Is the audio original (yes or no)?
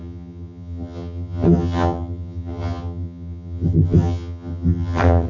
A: no